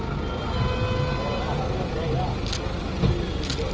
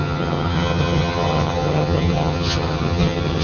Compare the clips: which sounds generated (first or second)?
second